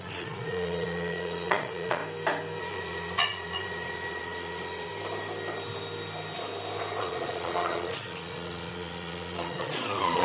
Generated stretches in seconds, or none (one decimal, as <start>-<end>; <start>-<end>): 0.0-2.0; 2.6-4.9; 7.0-10.2